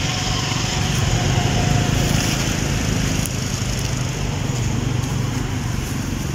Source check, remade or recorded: recorded